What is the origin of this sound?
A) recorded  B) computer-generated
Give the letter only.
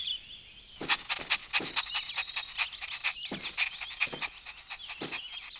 A